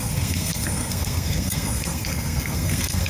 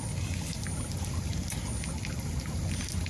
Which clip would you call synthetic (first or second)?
first